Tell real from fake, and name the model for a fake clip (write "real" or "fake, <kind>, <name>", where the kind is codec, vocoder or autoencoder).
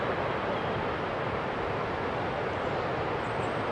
real